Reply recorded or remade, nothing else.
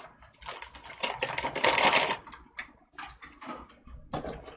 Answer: recorded